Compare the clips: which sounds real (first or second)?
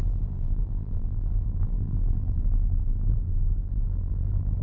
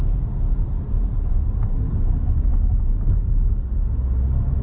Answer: second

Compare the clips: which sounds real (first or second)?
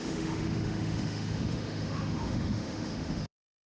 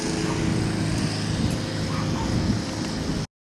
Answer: second